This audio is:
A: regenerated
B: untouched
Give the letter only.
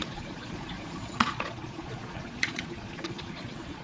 A